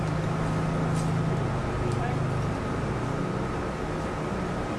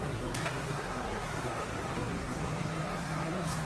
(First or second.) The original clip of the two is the first